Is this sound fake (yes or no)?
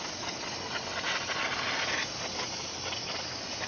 no